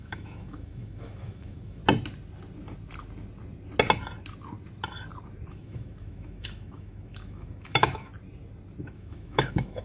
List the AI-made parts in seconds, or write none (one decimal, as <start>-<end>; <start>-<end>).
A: 0.0-1.8; 5.5-8.1; 8.8-9.8